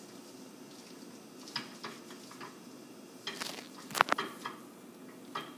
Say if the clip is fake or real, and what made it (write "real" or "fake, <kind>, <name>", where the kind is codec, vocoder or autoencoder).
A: real